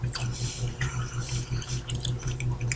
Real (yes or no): no